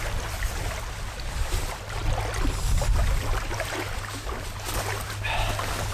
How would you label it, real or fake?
real